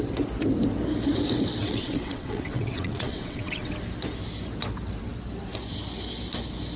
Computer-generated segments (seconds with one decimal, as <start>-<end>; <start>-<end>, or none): 1.6-3.7